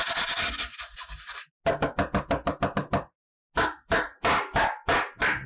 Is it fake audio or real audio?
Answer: real